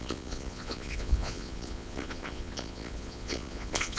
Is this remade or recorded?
remade